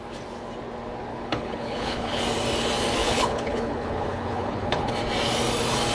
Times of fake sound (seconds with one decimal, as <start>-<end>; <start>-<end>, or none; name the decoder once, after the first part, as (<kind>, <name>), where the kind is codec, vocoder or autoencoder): 1.1-2.2 (codec, HILCodec); 3.0-4.9

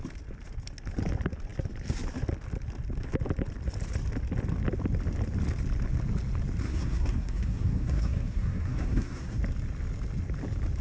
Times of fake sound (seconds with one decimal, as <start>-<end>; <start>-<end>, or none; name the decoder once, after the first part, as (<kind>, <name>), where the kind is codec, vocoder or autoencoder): 6.6-9.4 (codec, SNAC)

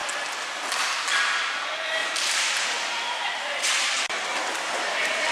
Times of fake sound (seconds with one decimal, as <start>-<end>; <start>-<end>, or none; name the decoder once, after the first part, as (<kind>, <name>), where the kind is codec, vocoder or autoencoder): 2.0-5.3 (vocoder, BigVGAN v2)